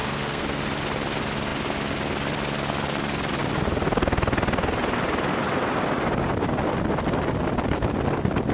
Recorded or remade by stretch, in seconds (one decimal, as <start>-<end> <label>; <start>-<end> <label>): 0.0-0.6 remade; 0.6-8.5 recorded